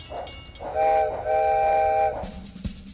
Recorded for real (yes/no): yes